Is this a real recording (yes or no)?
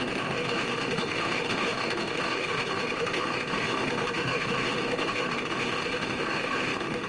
no